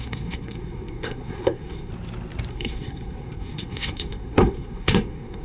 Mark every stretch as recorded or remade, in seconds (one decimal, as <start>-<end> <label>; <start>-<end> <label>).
0.0-1.9 remade; 1.9-2.5 recorded; 2.5-5.4 remade